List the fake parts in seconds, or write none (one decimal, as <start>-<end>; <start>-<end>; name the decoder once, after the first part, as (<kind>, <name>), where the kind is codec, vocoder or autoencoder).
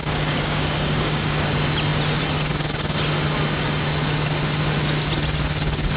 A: 0.0-1.5 (codec, DAC)